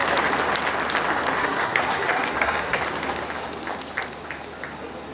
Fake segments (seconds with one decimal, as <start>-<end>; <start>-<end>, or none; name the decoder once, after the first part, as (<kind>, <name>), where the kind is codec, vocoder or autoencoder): 1.4-2.8 (codec, SNAC)

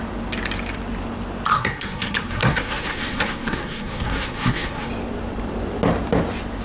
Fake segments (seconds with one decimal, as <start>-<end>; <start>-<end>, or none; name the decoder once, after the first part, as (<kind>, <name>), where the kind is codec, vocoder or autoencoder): 1.5-4.9 (codec, SNAC)

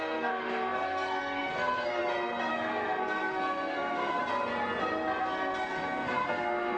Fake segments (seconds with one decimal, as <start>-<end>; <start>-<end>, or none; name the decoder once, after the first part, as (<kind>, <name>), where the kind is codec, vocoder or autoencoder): 0.0-2.0 (codec, SNAC); 2.5-4.2; 5.2-6.8

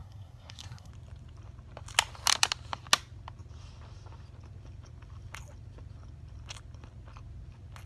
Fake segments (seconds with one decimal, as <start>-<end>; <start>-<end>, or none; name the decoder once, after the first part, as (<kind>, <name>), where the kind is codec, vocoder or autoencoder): 0.0-0.9 (codec, SNAC)